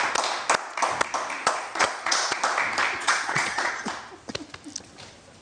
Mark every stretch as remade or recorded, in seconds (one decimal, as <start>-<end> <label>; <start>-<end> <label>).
0.0-1.4 recorded; 1.4-2.4 remade; 2.4-3.0 recorded; 3.0-3.7 remade; 3.7-5.4 recorded

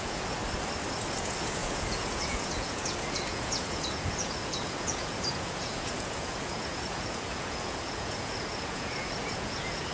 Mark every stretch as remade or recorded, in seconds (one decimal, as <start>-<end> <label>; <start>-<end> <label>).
0.0-0.4 remade; 0.4-1.1 recorded; 1.1-9.9 remade

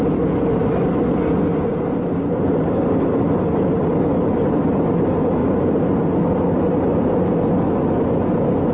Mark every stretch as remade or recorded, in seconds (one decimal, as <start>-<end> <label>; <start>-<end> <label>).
0.0-8.7 recorded

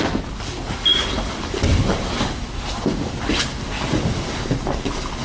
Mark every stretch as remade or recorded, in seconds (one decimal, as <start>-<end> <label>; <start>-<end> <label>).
0.0-5.2 recorded

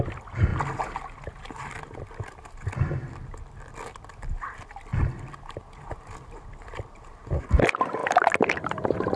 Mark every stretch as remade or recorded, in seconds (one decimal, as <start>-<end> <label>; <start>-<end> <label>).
0.0-9.2 recorded

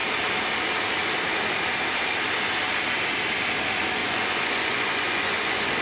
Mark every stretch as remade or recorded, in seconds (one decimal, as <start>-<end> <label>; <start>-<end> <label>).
0.0-4.0 recorded; 4.0-5.8 remade

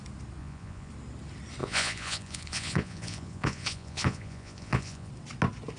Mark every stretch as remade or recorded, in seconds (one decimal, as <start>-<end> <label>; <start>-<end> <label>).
0.0-0.4 recorded; 0.4-0.9 remade; 0.9-1.6 recorded; 1.6-5.1 remade; 5.1-5.8 recorded